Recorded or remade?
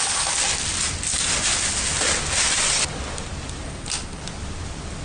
recorded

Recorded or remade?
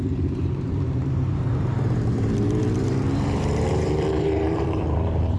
remade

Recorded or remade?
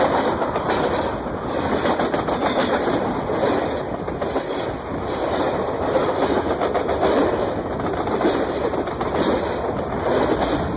recorded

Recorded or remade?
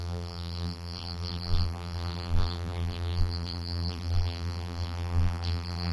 remade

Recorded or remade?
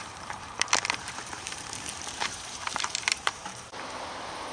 remade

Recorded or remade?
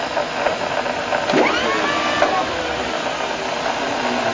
recorded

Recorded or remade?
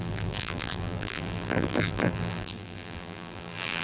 remade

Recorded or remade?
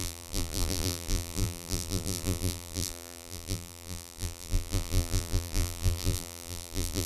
remade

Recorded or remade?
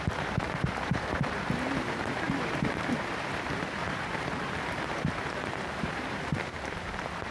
remade